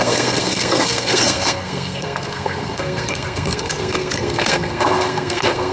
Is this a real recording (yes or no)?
no